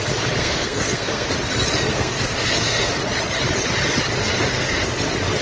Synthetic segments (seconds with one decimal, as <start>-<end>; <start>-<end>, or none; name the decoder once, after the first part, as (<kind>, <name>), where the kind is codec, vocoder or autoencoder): 0.4-1.3 (codec, SNAC); 1.9-2.9; 4.2-4.9